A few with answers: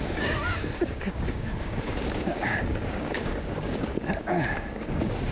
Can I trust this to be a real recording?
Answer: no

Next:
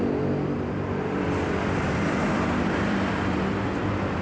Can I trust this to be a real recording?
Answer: no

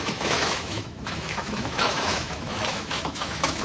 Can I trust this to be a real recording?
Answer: no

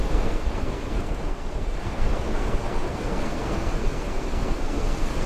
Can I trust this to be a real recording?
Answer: no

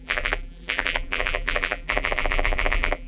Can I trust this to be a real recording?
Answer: no